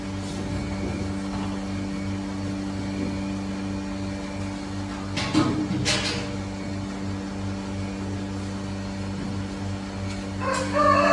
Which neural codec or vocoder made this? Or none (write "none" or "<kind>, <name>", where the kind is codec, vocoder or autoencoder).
none